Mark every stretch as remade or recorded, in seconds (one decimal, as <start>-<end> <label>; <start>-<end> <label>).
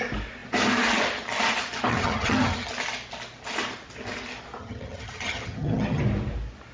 0.0-1.9 recorded; 1.9-2.7 remade; 2.7-4.6 recorded; 4.6-6.0 remade; 6.0-6.7 recorded